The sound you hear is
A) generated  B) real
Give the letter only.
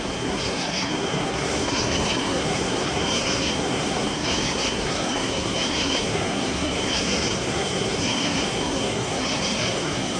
A